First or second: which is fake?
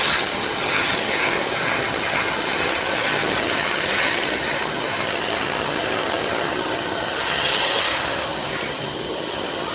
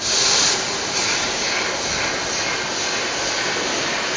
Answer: first